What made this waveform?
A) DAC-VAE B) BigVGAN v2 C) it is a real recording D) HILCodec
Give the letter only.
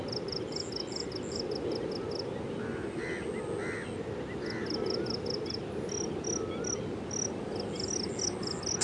C